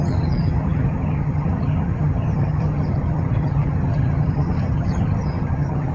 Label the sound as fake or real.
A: fake